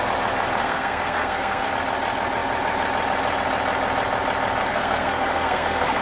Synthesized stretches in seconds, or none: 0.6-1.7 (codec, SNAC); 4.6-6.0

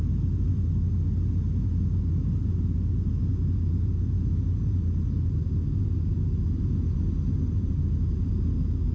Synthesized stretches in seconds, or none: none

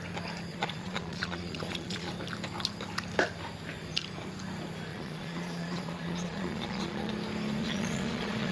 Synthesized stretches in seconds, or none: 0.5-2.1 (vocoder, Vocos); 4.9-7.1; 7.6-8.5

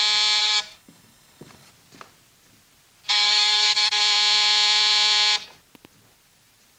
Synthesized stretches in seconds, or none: 0.4-1.7 (codec, DAC); 3.1-4.0

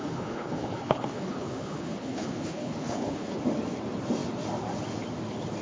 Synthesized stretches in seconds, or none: 0.0-3.4 (codec, HILCodec)

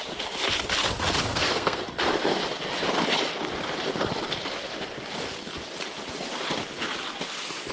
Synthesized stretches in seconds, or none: 1.3-1.8 (codec, SNAC)

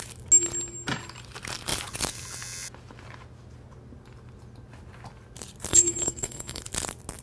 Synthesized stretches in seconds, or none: 5.7-6.6 (codec, SNAC)